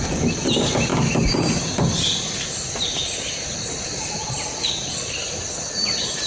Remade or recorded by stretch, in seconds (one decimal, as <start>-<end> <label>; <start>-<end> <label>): 0.0-6.3 recorded